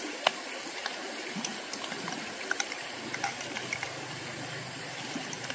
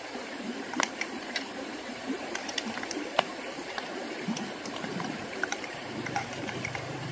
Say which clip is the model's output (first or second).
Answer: second